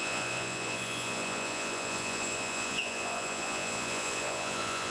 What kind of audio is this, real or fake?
fake